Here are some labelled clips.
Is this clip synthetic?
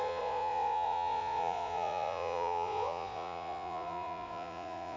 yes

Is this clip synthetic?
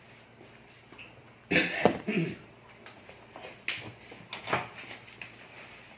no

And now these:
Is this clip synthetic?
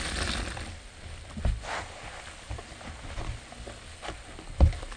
no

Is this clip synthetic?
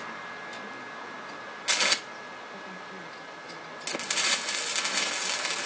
no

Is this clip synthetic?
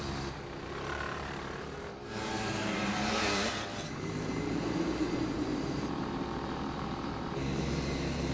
yes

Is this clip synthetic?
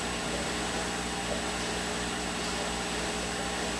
no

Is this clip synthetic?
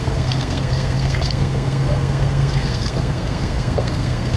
yes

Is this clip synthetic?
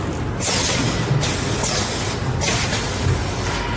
no